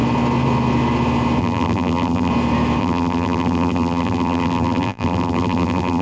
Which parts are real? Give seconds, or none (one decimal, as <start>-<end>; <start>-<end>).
0.0-1.4; 2.3-2.8

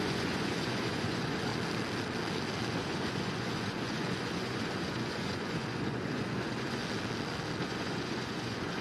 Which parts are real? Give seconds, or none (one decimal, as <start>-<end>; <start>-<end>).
1.5-2.7; 6.8-7.6

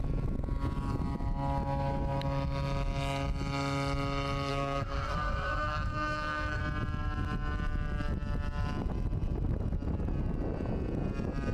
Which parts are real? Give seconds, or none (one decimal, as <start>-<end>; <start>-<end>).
0.0-4.5; 6.6-11.5

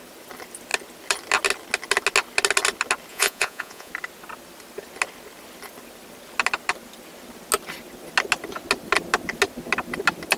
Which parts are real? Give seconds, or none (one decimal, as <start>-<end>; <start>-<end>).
0.0-3.1; 3.9-10.4

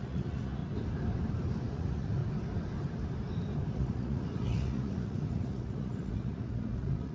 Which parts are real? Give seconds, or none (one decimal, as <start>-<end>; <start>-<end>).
0.6-1.7; 2.2-3.7

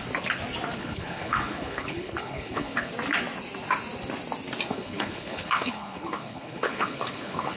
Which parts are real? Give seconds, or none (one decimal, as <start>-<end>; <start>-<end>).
0.0-0.8; 2.9-4.7

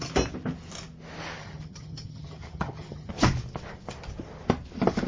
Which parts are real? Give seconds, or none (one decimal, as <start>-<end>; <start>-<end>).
0.0-1.4; 3.1-5.1